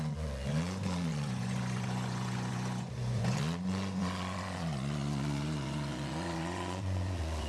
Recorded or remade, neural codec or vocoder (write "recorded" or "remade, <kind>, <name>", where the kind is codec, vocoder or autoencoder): remade, vocoder, Vocos